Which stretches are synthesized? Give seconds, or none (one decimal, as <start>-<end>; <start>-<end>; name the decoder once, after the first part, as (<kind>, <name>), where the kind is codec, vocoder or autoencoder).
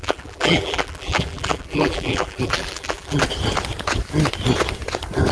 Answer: 0.0-3.2 (vocoder, BigVGAN v2)